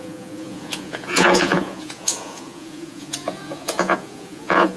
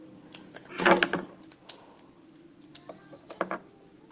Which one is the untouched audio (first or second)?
second